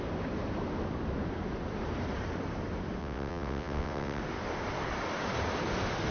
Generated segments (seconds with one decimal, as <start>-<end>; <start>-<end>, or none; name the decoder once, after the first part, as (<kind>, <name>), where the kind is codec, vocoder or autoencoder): 3.0-4.2 (vocoder, WaveNeXt)